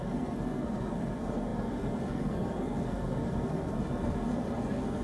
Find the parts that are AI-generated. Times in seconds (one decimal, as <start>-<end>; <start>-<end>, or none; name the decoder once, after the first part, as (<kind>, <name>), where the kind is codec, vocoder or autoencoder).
0.0-5.0 (codec, SNAC)